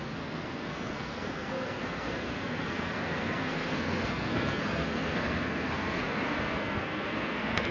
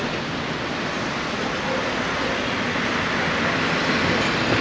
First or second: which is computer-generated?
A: first